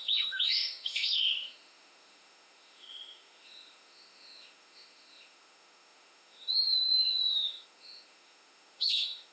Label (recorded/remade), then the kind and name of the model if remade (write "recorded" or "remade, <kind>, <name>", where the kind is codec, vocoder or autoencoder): remade, autoencoder, DAC-VAE